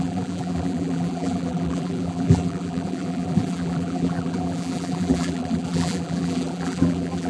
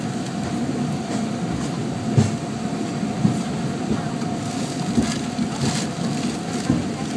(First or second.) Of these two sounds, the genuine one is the second